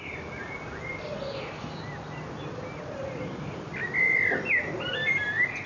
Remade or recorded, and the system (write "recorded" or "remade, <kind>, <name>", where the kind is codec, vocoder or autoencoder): recorded